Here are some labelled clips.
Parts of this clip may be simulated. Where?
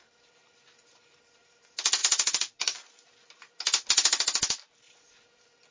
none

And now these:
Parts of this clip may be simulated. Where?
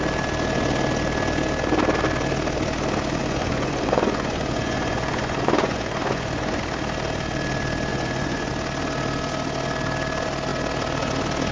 3.2-6.6 (vocoder, Vocos); 7.9-8.5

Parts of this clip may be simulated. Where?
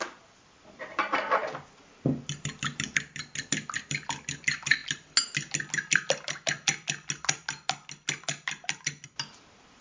none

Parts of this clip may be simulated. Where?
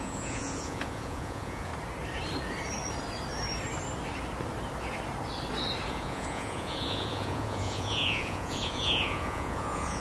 0.0-1.7 (vocoder, Vocos); 5.9-10.0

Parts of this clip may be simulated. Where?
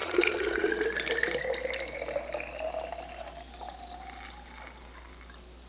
0.0-0.7 (vocoder, Vocos)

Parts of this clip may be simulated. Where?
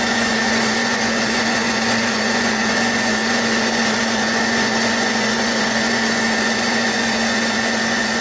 0.0-8.2 (vocoder, Vocos)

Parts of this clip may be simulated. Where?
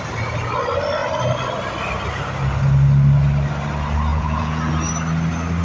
4.1-4.7 (vocoder, Vocos)